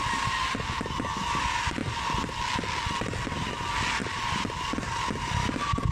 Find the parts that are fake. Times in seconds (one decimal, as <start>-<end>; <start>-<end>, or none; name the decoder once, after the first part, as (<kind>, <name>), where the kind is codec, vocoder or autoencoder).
none